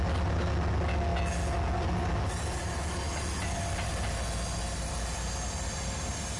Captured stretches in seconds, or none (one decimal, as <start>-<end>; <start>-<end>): 0.0-6.4